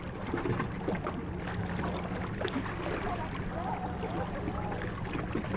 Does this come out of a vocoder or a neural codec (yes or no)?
no